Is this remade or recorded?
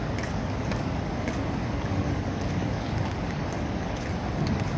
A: remade